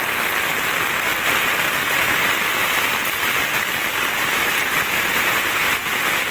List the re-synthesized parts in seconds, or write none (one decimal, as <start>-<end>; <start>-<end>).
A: 5.1-5.7